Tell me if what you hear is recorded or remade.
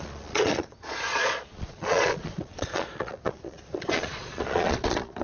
remade